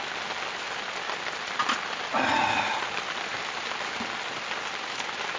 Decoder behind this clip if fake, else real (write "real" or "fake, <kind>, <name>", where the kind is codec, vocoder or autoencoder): real